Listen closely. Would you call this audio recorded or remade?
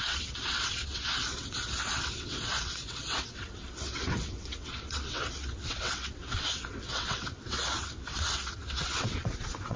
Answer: remade